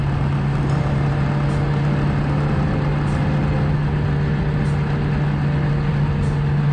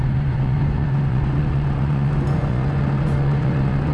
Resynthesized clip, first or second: second